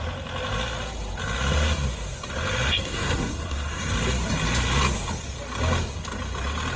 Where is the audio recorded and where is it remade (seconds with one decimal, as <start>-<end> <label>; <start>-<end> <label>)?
0.0-2.7 recorded; 2.7-3.9 remade; 3.9-6.8 recorded